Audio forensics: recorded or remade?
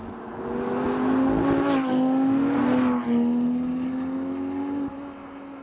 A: recorded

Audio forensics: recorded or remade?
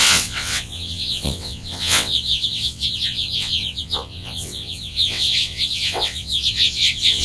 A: remade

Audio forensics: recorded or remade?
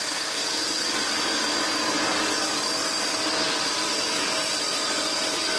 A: recorded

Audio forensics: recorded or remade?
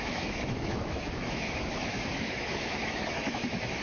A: remade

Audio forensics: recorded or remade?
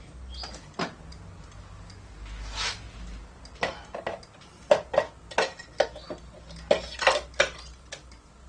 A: recorded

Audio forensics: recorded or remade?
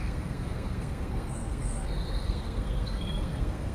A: remade